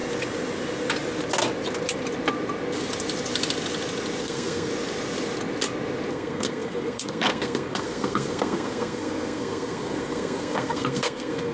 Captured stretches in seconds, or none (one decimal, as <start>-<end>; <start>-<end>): 0.0-4.2; 4.7-6.1